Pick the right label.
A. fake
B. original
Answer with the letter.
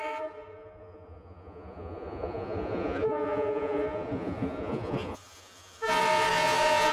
A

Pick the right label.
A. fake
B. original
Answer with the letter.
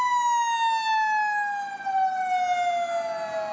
B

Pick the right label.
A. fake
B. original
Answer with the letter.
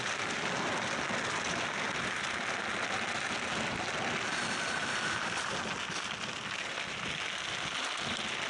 B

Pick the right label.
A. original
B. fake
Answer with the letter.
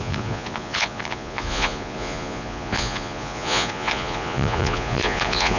B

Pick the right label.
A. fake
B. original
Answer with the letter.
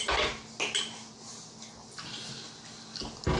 B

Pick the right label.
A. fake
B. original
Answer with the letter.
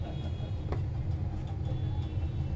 B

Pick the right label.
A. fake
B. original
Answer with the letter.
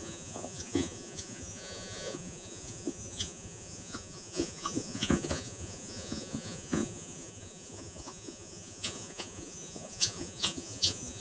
A